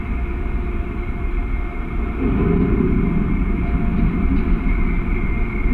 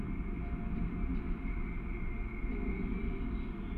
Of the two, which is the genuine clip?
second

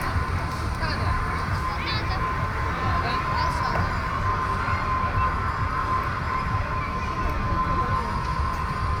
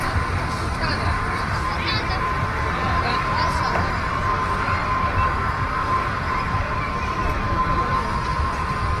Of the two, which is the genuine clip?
first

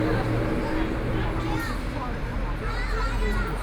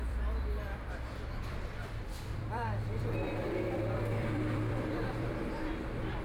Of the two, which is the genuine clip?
first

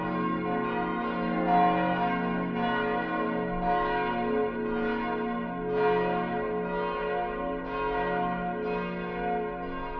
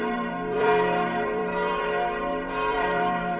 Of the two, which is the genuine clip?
first